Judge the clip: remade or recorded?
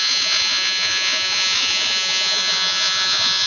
remade